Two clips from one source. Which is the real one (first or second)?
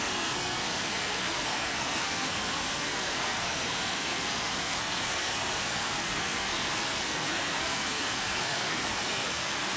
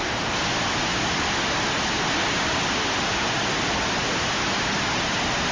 second